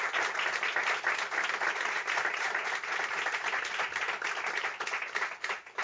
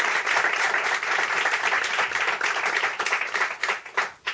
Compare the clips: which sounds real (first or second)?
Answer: first